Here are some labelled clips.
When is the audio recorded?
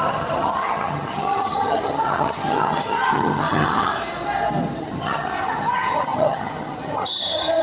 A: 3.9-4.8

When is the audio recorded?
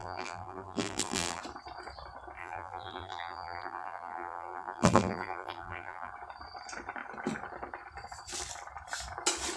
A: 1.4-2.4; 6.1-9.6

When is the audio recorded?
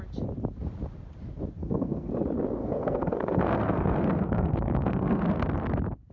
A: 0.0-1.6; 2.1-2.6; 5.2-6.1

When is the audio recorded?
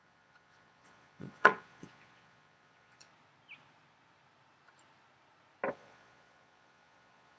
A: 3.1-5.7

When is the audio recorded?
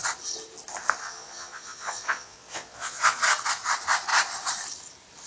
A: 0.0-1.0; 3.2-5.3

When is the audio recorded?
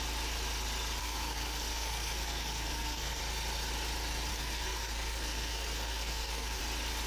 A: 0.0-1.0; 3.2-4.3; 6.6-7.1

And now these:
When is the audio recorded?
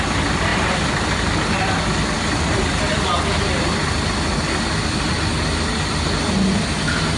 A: 0.0-0.5; 2.7-7.2